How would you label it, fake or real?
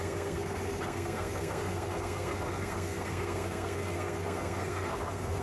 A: fake